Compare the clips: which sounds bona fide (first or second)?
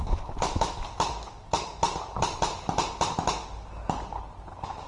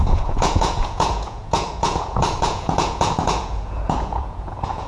first